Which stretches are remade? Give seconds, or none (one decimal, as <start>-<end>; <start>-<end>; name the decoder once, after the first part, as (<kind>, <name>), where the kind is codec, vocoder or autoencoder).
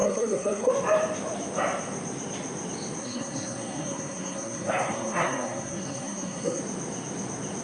0.0-0.7 (codec, SNAC); 3.0-6.6